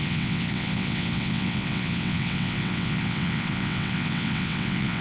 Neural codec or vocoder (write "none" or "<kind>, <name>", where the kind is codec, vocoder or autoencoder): vocoder, WaveNeXt